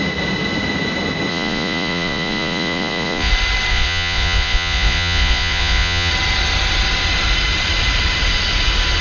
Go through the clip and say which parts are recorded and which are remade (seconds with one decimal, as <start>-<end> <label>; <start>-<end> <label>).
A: 0.0-1.3 recorded; 1.3-3.3 remade; 3.3-3.7 recorded; 3.7-6.1 remade; 6.1-9.0 recorded